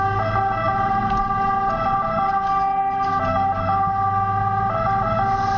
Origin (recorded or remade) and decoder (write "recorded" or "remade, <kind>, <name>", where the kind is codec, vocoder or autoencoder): recorded